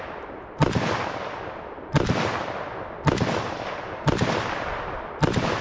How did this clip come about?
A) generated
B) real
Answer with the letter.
B